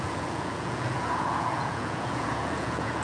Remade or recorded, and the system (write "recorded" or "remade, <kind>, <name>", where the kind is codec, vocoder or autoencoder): remade, vocoder, Vocos